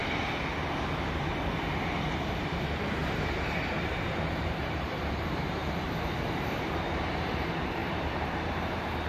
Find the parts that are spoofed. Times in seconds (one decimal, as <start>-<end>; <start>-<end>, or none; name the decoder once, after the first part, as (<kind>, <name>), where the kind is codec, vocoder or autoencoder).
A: 2.1-5.6 (vocoder, BigVGAN v2); 6.4-9.1